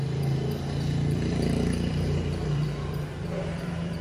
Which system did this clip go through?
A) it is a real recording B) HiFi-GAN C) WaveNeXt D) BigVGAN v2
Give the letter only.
D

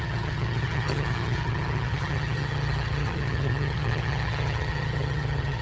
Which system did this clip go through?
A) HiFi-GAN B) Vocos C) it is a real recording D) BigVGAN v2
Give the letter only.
A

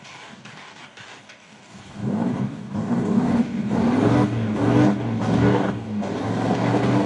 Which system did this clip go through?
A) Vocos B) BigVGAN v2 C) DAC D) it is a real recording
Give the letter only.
C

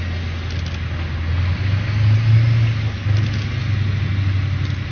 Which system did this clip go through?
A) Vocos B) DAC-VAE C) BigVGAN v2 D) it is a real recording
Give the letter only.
D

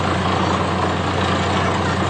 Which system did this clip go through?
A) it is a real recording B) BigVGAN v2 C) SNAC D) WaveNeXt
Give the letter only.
A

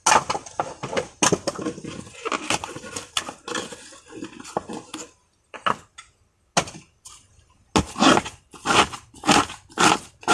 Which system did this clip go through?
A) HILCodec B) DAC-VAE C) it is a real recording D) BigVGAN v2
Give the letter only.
C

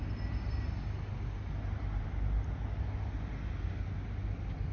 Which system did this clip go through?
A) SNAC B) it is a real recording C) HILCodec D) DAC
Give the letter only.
B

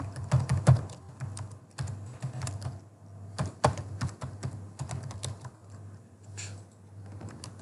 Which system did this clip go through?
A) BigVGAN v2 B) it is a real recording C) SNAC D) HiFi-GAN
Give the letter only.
B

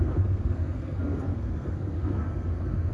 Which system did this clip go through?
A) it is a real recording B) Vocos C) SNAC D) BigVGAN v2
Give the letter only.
C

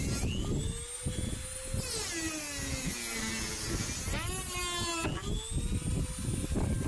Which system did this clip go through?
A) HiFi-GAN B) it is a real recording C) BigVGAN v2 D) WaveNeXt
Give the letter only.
B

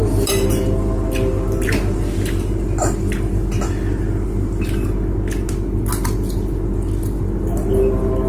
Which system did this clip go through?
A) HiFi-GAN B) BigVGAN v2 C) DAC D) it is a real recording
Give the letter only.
D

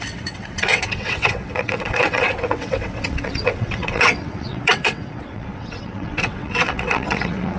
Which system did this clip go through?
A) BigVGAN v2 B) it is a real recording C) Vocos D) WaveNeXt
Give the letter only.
D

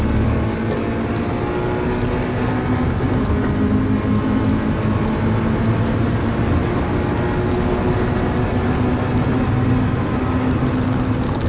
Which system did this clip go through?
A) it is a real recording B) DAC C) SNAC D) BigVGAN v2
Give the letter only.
A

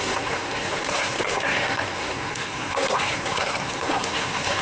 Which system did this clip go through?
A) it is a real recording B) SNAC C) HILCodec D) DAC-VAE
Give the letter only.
B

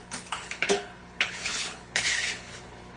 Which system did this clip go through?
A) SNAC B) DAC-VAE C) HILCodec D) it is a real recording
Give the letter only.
C